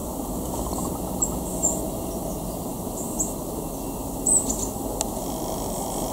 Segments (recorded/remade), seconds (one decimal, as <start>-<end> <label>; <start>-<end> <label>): 0.0-0.9 remade; 0.9-4.0 recorded; 4.0-5.0 remade; 5.0-6.1 recorded